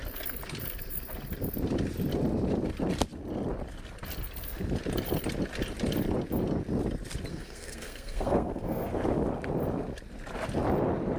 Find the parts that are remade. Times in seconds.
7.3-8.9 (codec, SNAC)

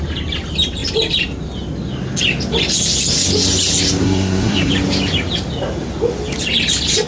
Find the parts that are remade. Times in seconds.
4.0-4.7 (codec, SNAC)

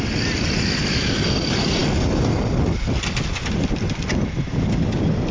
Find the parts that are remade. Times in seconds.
none

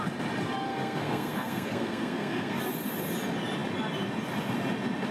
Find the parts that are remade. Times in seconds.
0.7-2.6 (codec, SNAC)

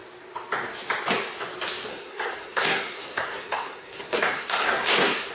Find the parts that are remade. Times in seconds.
1.9-5.3 (codec, SNAC)